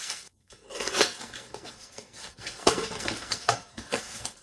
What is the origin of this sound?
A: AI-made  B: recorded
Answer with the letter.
A